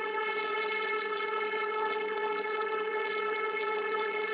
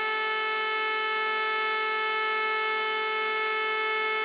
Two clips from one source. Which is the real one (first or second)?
second